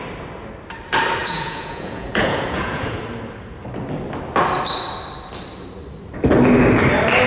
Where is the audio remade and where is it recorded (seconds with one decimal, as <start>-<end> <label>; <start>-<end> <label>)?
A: 0.0-1.2 recorded; 1.2-3.0 remade; 3.0-7.3 recorded